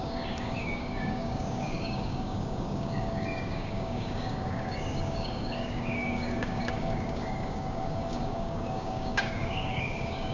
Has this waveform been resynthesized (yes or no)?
yes